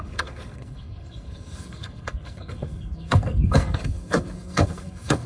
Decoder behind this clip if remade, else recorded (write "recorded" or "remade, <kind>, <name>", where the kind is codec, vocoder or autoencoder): remade, codec, SNAC